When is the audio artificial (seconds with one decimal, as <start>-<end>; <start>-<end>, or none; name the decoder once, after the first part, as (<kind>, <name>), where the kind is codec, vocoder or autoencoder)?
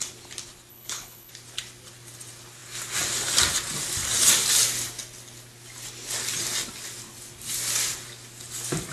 0.7-1.3 (codec, HILCodec)